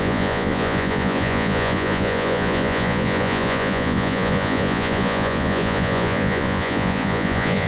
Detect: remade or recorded remade